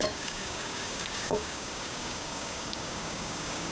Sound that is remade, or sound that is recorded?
remade